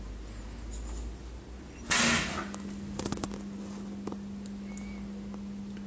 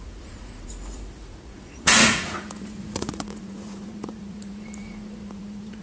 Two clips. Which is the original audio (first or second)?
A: first